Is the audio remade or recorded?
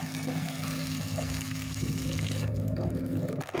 remade